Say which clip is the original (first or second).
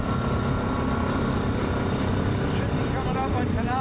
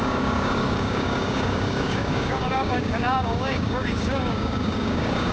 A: first